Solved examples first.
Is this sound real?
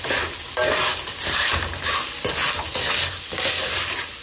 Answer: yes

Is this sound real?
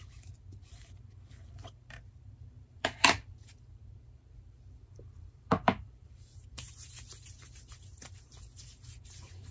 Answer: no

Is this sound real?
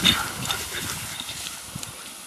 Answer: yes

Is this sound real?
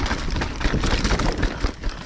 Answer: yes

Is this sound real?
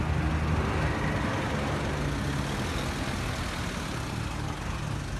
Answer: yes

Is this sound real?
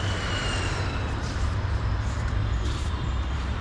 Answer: no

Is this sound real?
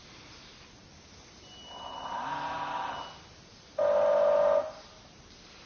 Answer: yes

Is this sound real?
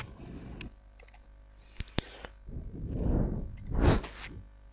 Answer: yes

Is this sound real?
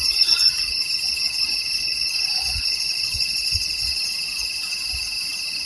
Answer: no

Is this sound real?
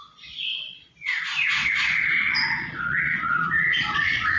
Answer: no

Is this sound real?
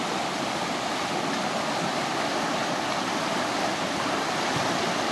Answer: yes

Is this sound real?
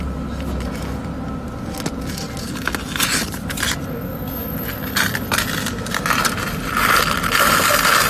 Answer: yes